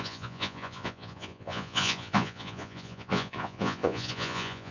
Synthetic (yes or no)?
yes